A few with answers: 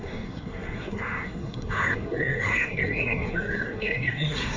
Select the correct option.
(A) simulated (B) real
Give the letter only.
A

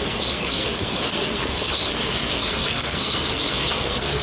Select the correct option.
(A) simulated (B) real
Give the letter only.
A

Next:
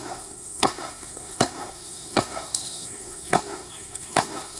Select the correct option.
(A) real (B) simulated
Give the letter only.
B